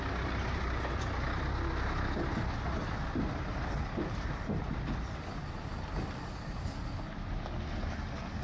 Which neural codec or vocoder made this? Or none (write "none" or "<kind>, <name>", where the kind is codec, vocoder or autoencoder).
none